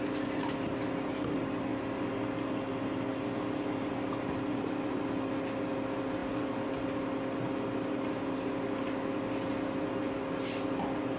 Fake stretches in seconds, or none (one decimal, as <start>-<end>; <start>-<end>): 0.0-1.7; 3.9-11.2